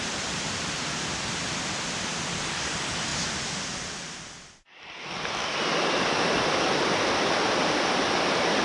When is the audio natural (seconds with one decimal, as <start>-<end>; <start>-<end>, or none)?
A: 0.0-8.6